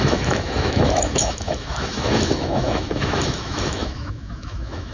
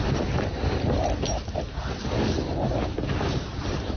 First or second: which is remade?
first